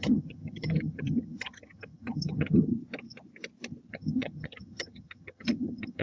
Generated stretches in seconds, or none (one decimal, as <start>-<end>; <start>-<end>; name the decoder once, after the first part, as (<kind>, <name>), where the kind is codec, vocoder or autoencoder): 0.0-2.7 (vocoder, HiFi-GAN); 3.9-6.0